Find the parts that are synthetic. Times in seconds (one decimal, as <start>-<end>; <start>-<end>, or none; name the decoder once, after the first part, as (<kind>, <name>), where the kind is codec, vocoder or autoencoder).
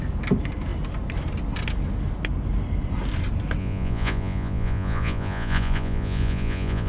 3.6-6.9 (vocoder, Vocos)